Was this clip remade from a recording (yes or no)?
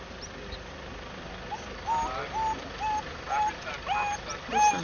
no